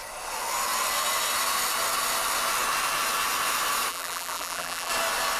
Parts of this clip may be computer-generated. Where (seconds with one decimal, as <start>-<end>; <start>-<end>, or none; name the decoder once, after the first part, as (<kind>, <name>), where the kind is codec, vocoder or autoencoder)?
3.9-4.9 (vocoder, BigVGAN v2)